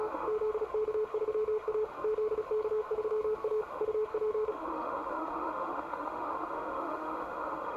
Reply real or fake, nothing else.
fake